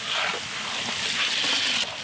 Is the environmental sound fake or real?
real